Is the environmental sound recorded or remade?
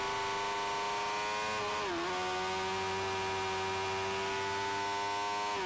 recorded